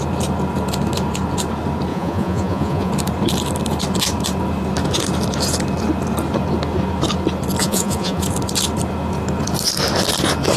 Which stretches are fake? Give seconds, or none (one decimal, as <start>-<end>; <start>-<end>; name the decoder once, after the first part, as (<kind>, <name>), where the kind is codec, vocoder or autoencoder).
1.9-2.9 (vocoder, Vocos); 7.6-8.2